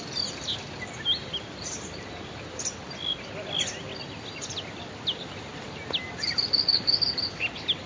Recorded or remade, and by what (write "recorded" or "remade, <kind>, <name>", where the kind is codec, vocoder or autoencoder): recorded